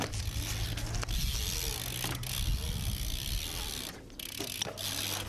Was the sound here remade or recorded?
recorded